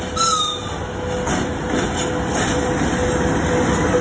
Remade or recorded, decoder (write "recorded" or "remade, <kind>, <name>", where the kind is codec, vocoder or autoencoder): recorded